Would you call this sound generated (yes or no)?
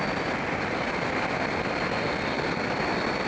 no